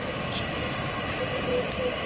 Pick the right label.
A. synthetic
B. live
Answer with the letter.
A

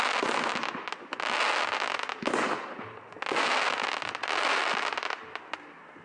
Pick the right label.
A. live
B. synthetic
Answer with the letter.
A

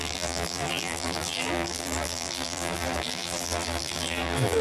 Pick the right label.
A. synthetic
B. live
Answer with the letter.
A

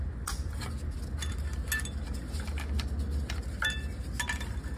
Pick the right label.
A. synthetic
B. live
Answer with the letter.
B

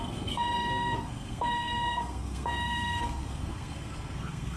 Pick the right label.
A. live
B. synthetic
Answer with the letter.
B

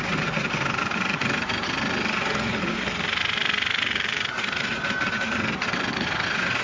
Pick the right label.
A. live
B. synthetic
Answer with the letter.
A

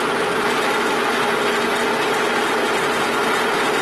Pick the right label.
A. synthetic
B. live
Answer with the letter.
B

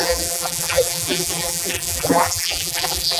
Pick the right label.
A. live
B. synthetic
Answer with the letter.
B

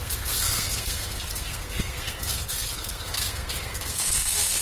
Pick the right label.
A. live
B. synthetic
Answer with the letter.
B